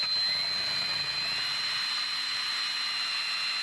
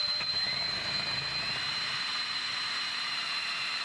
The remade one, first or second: second